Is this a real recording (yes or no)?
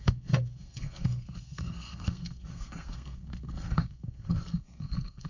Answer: no